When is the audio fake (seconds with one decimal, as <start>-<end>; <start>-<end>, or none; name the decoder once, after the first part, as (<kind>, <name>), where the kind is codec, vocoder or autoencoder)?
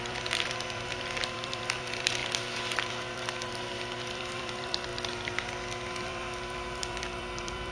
0.0-2.2 (vocoder, BigVGAN v2); 2.9-4.9; 6.0-7.7